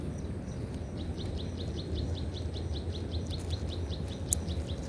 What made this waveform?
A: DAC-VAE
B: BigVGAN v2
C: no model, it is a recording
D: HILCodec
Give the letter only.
C